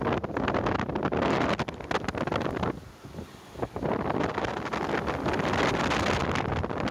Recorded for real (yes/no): yes